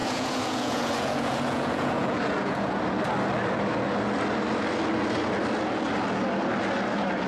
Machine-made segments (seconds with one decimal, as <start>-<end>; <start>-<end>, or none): 0.0-2.8